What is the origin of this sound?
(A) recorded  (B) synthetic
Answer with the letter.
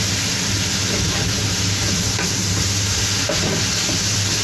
A